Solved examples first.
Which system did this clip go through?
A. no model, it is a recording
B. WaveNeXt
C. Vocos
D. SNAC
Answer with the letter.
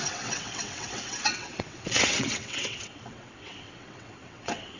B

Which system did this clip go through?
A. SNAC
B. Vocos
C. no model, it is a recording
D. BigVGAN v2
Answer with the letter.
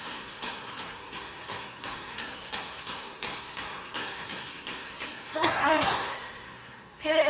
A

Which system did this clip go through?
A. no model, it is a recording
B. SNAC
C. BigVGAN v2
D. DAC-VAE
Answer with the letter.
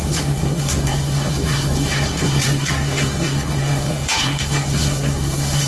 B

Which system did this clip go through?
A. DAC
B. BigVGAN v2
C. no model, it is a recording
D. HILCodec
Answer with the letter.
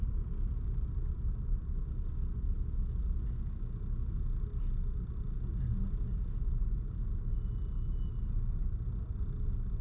C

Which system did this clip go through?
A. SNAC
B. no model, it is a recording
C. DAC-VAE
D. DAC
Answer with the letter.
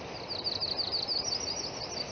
B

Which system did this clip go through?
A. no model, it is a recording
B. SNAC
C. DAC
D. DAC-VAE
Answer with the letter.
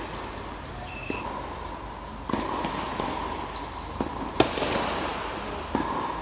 A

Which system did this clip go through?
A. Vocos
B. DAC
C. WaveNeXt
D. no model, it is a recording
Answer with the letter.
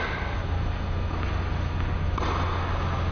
D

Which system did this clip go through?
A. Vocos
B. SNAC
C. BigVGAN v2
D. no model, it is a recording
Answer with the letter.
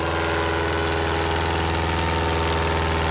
D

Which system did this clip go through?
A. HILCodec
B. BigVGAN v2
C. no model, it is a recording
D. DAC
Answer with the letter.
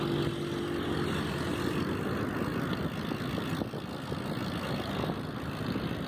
C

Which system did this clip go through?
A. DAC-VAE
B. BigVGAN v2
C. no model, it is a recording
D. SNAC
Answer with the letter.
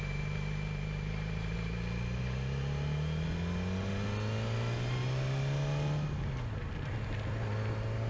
C